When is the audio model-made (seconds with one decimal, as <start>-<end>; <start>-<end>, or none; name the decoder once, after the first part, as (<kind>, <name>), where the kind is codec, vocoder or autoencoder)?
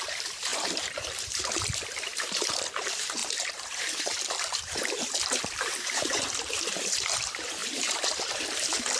0.0-9.0 (vocoder, BigVGAN v2)